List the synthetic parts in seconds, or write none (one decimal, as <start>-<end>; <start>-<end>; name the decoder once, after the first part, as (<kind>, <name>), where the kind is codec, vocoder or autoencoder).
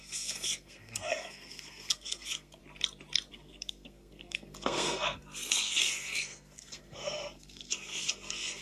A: 0.0-2.6 (codec, SNAC); 3.3-8.6